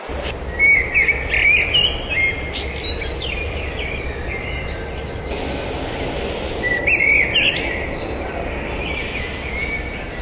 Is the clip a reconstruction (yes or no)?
no